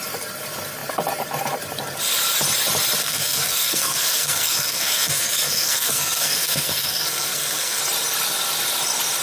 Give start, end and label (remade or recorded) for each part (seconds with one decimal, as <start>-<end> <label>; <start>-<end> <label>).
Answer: 0.0-3.0 recorded; 3.0-7.8 remade; 7.8-9.2 recorded